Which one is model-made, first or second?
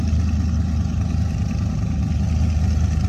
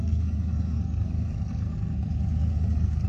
second